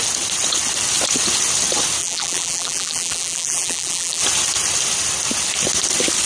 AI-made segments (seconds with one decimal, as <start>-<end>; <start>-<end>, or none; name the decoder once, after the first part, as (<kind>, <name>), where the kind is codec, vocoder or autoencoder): 2.0-4.2 (vocoder, BigVGAN v2)